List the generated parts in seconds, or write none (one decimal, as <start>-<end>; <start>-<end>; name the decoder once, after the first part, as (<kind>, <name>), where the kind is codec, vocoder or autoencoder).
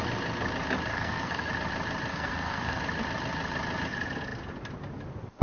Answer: 0.9-1.5 (codec, SNAC); 2.1-2.8